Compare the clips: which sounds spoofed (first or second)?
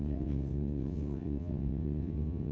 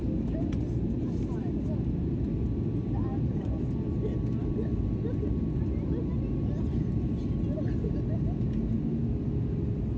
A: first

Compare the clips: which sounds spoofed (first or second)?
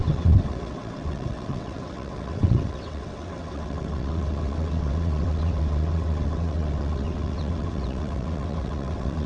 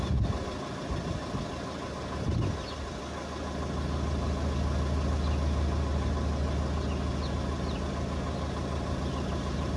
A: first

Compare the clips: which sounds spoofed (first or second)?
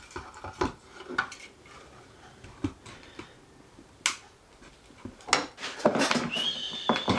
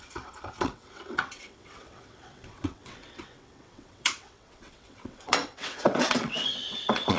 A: second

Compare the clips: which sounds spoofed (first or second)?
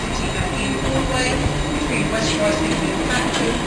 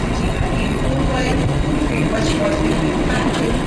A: second